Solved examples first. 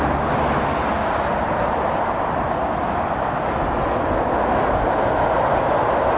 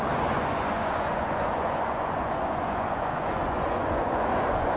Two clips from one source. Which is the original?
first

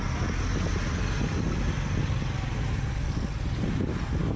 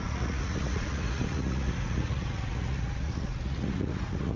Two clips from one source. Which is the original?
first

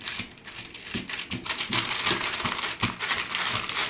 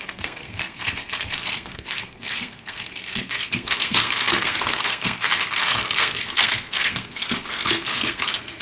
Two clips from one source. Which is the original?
first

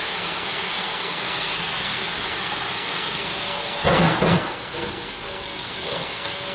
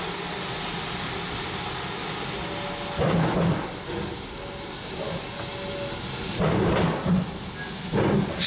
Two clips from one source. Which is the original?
second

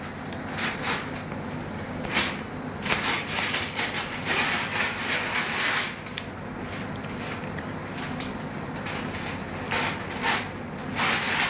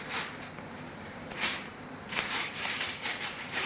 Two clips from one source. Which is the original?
first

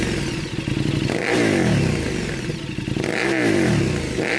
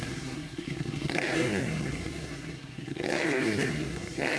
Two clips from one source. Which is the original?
first